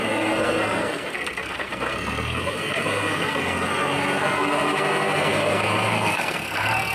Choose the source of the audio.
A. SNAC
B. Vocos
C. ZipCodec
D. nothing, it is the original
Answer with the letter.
A